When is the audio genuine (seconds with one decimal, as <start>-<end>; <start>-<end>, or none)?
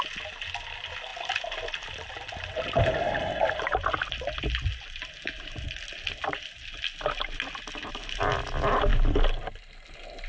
0.0-10.3